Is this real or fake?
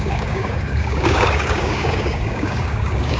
fake